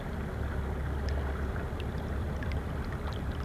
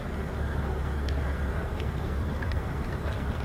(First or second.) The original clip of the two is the first